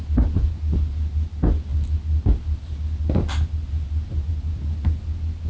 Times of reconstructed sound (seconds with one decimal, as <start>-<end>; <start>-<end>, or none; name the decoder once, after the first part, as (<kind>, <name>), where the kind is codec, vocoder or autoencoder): none